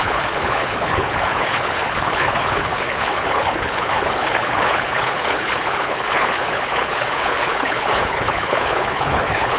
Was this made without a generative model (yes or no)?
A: no